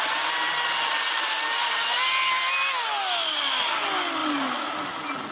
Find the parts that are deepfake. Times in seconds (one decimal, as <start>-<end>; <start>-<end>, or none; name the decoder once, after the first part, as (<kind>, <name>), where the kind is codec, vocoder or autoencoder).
none